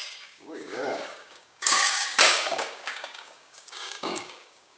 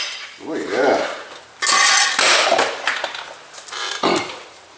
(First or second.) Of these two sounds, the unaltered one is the second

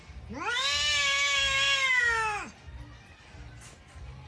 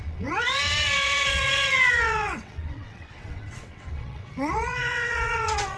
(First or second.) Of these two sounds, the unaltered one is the first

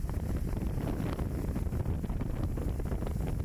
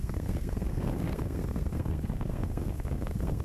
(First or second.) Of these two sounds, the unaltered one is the first